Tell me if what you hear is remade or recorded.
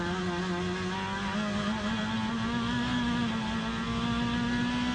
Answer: recorded